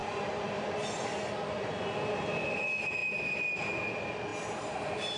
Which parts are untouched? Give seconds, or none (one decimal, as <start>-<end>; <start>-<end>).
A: 0.0-5.2